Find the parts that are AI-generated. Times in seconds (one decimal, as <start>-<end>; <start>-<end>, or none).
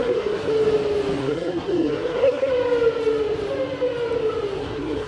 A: 0.0-0.5; 1.2-2.5; 4.6-5.1